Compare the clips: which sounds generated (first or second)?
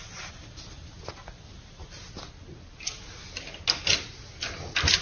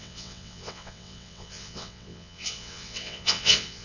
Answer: second